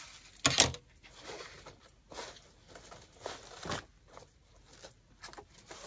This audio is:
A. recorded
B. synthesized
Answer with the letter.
A